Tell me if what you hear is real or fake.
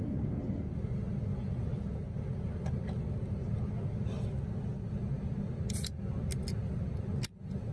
real